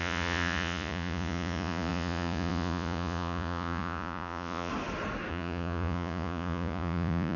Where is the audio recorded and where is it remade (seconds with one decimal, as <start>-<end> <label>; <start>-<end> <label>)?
0.0-4.7 remade; 4.7-5.3 recorded; 5.3-7.4 remade